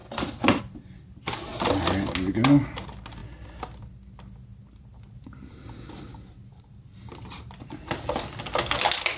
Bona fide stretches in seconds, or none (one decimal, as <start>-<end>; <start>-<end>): 0.0-6.1; 8.2-9.2